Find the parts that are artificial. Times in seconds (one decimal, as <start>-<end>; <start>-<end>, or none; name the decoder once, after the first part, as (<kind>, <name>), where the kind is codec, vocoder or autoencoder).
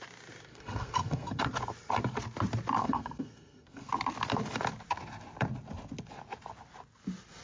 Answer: 0.5-1.4 (codec, SNAC); 2.8-3.9